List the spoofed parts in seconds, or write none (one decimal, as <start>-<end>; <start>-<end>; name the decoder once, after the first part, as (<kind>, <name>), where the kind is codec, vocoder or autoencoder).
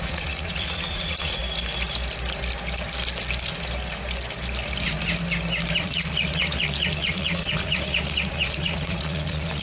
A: 0.0-1.4 (vocoder, Vocos); 5.8-9.6